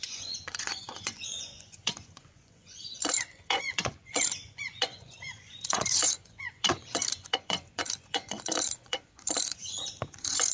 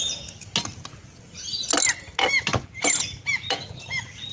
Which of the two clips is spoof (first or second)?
first